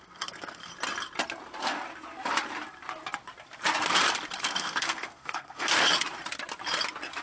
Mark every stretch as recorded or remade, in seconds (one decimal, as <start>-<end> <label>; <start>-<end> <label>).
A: 0.0-0.7 remade; 0.7-4.4 recorded; 4.4-5.7 remade; 5.7-7.2 recorded